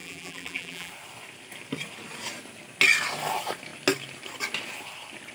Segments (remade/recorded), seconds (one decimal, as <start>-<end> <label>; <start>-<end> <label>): 0.0-0.9 remade; 0.9-5.3 recorded